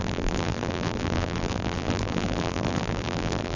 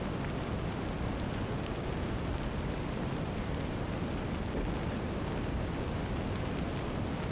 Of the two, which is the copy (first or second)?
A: first